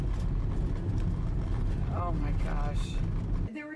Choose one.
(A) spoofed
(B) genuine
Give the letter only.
B